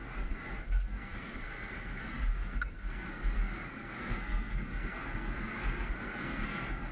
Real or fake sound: fake